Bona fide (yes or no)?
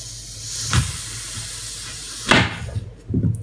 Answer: yes